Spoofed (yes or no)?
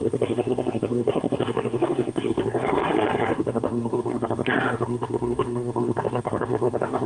yes